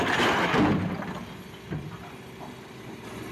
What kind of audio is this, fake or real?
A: real